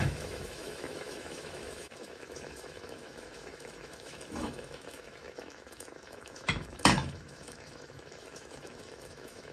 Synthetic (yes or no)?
yes